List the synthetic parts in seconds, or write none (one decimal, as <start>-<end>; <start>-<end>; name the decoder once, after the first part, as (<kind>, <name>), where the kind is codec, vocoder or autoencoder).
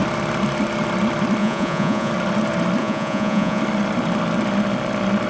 1.4-2.1 (vocoder, Vocos); 2.8-3.6